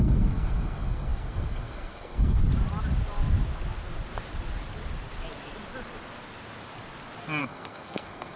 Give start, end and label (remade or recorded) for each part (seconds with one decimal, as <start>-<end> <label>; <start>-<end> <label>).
0.0-2.4 remade; 2.4-7.4 recorded; 7.4-8.4 remade